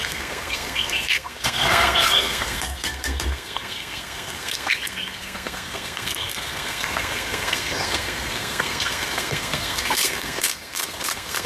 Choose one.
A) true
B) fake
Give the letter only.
B